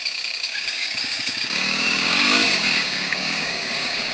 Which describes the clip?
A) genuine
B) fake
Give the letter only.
B